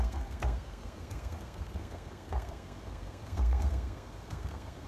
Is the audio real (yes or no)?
no